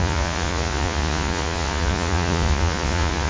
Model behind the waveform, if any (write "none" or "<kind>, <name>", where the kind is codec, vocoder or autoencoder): vocoder, Vocos